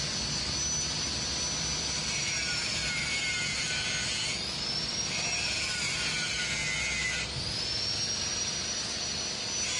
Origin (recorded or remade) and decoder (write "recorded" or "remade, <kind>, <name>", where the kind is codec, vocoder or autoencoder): recorded